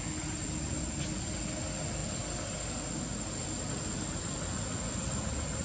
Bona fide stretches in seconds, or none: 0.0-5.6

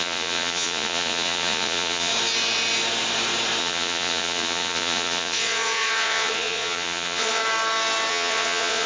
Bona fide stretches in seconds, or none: 2.1-3.6; 7.4-8.1

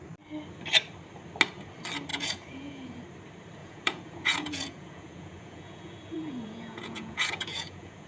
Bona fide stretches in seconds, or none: 0.0-2.1; 3.0-3.6

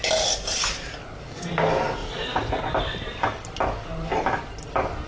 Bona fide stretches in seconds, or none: 0.0-2.0; 2.6-5.1